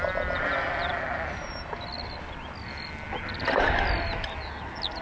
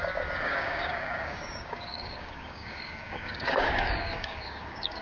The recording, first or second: first